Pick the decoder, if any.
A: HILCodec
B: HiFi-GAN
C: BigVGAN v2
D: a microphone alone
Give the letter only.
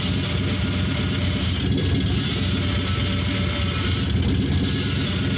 D